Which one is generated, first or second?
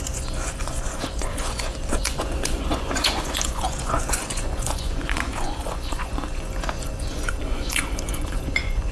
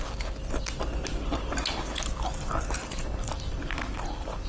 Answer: first